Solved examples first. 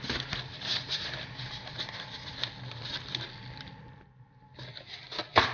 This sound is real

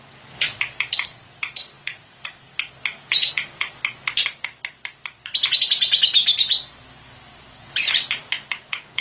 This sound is real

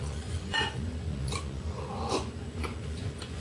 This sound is fake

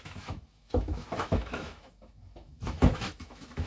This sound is fake